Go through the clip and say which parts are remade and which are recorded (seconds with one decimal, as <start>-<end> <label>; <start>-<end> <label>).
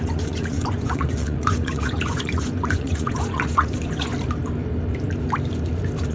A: 0.0-4.1 remade; 4.1-6.1 recorded